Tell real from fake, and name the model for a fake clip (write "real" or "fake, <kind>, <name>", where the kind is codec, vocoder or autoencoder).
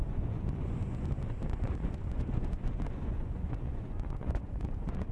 fake, vocoder, Vocos